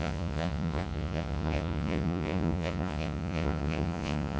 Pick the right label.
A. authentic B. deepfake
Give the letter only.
B